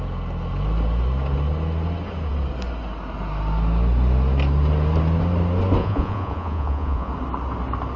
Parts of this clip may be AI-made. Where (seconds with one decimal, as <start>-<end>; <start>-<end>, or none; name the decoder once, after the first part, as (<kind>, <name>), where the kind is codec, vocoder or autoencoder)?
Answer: 5.8-7.1 (vocoder, Vocos)